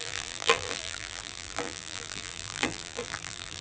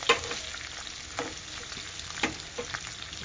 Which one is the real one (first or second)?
second